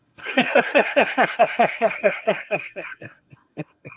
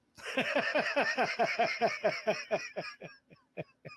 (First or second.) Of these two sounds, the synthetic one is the first